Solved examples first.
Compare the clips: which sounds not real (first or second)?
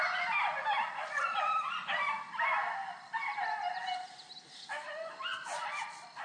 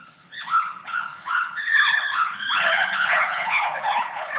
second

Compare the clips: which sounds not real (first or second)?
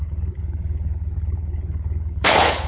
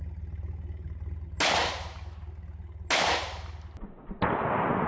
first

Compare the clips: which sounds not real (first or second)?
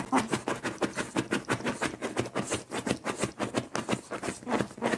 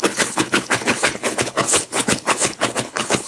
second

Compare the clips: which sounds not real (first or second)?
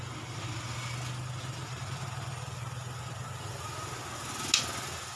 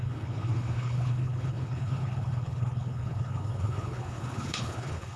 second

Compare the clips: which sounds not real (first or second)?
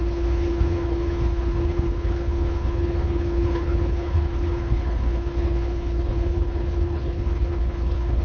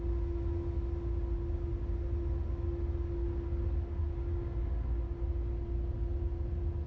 first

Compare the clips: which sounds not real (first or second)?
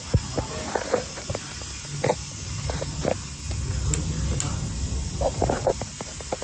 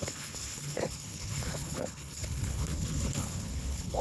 second